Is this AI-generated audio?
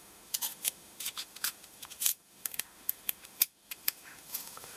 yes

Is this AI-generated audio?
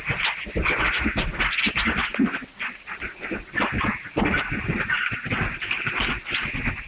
no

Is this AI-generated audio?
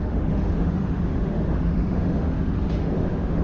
yes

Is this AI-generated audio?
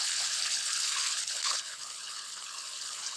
yes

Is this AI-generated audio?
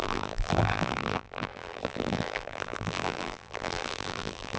yes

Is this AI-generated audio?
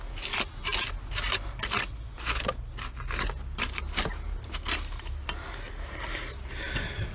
no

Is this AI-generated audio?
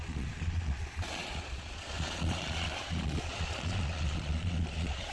yes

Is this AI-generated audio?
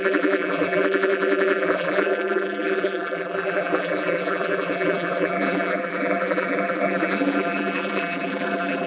yes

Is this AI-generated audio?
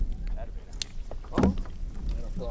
no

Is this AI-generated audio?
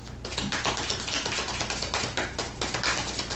no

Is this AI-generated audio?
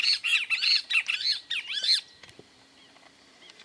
yes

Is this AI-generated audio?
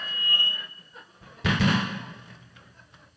no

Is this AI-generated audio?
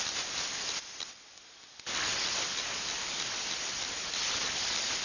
no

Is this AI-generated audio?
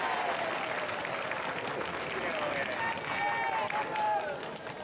no